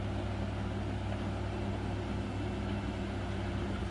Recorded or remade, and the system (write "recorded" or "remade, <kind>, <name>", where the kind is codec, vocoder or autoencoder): recorded